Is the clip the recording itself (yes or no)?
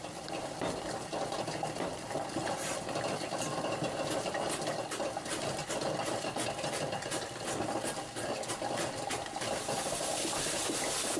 yes